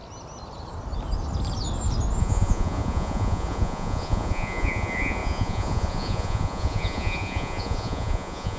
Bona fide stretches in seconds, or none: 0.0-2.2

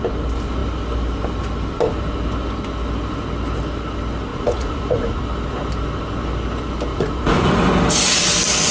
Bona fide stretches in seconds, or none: 0.0-4.3; 5.2-6.9; 7.5-8.7

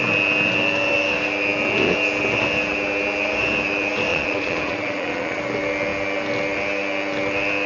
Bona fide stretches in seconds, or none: 0.0-4.1; 5.4-7.7

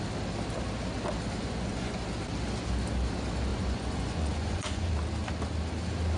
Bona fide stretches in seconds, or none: 0.0-1.4; 2.0-3.5; 4.9-6.2

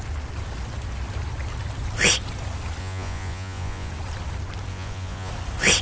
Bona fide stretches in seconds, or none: 0.0-2.8; 3.9-4.7; 5.3-5.8

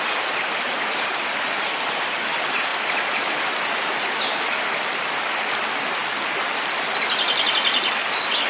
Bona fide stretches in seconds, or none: 0.0-8.5

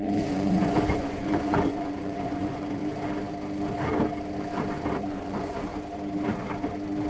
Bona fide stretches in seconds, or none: 2.8-5.0; 5.7-7.1

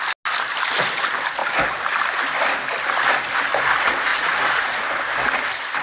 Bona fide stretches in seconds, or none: 0.0-4.1; 4.8-5.8